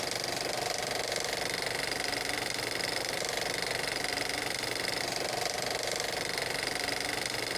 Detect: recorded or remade remade